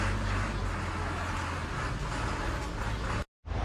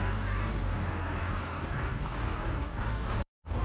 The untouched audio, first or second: first